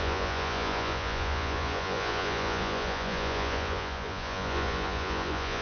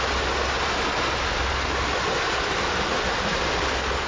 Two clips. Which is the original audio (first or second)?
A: second